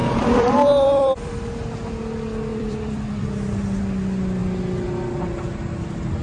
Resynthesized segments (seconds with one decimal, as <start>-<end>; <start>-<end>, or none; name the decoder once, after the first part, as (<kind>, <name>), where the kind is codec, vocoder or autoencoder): 0.0-1.3 (vocoder, BigVGAN v2); 2.5-3.8